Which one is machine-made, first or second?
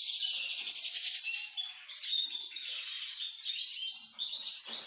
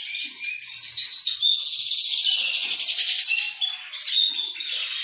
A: first